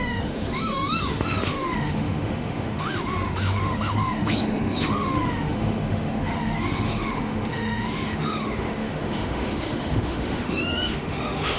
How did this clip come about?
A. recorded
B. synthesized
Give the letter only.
B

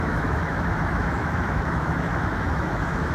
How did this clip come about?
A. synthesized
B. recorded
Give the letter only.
A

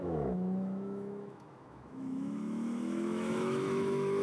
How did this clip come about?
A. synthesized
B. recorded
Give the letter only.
A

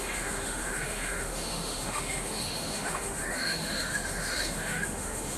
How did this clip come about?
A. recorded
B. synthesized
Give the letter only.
B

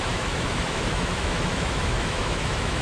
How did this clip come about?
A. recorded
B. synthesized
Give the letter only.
B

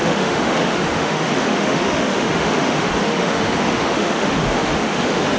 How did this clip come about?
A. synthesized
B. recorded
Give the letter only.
A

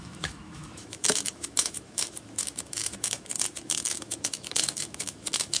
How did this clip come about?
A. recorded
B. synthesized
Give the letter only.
B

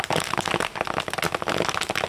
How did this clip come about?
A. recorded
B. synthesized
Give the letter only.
A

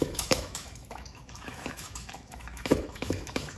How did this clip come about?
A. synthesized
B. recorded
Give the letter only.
A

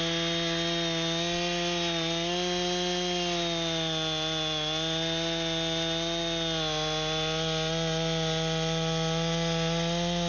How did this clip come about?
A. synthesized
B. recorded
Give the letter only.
B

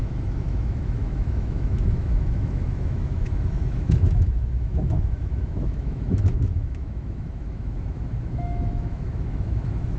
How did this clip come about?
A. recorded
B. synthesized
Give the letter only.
B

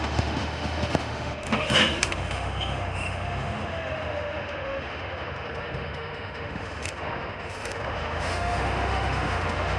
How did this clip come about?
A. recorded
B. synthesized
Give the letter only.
B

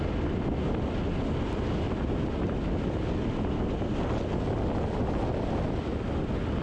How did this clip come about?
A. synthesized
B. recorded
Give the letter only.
B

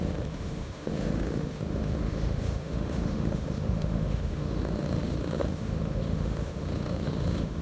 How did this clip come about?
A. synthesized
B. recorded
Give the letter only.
A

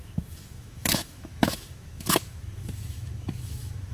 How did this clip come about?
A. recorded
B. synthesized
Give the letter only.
B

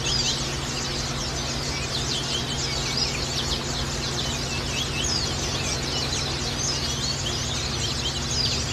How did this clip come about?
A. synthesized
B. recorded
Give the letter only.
B